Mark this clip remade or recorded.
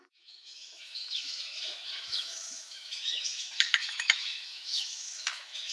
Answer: remade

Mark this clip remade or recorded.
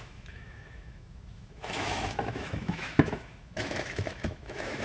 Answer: remade